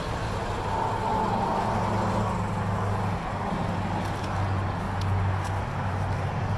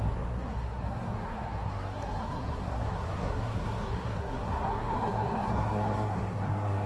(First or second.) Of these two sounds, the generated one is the second